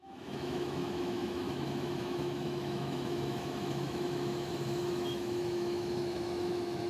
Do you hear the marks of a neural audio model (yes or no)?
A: yes